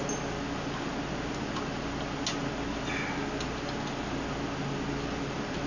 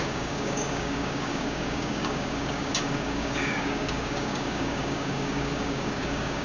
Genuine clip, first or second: first